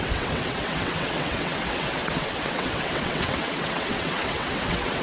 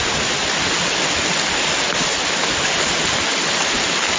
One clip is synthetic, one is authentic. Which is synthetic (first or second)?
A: first